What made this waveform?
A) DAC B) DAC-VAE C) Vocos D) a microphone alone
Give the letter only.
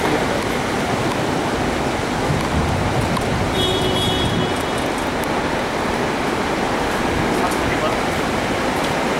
D